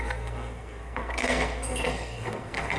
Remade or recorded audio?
remade